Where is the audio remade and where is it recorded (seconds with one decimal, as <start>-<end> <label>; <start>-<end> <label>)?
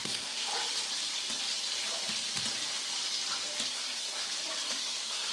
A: 0.0-0.5 remade; 0.5-3.7 recorded; 3.7-4.2 remade; 4.2-4.7 recorded; 4.7-5.3 remade